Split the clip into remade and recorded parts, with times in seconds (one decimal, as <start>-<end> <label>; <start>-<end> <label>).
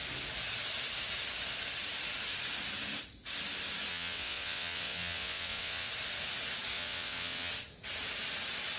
0.0-3.9 recorded; 3.9-5.9 remade; 5.9-6.7 recorded; 6.7-7.5 remade; 7.5-8.8 recorded